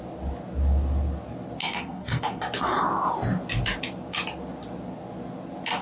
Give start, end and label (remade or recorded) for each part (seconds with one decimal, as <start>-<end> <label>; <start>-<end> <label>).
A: 0.0-1.6 recorded; 1.6-2.4 remade; 2.4-5.8 recorded